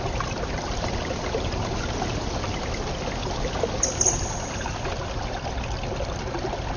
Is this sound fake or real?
real